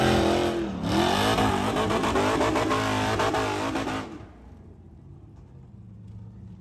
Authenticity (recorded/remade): recorded